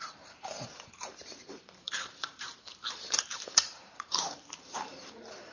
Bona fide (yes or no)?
no